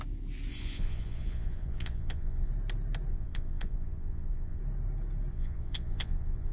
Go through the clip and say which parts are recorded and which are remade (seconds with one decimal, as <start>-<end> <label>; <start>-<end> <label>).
0.0-0.5 recorded; 0.5-2.5 remade; 2.5-3.1 recorded; 3.1-4.6 remade; 4.6-5.3 recorded; 5.3-6.5 remade